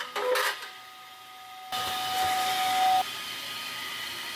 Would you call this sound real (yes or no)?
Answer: yes